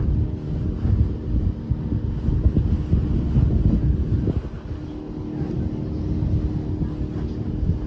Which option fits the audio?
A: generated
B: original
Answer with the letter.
B